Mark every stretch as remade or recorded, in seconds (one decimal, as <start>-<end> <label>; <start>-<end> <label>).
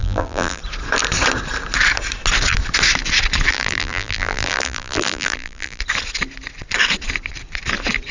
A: 0.0-0.6 remade; 0.6-3.5 recorded; 3.5-5.8 remade; 5.8-8.1 recorded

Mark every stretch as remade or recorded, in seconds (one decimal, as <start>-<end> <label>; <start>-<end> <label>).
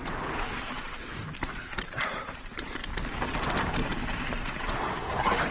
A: 0.0-2.8 remade; 2.8-3.6 recorded; 3.6-5.5 remade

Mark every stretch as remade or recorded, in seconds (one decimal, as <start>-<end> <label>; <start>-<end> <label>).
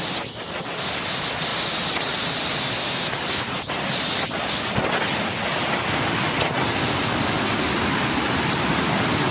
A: 0.0-9.3 recorded